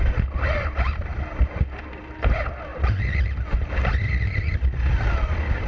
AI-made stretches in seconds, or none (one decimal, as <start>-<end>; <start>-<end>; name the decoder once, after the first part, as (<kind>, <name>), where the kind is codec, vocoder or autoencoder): none